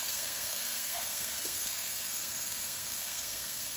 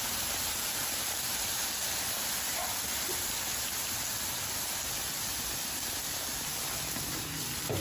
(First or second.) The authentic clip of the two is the second